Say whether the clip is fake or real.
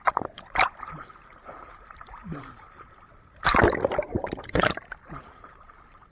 fake